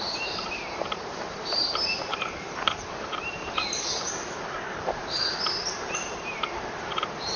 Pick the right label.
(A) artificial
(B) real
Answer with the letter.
A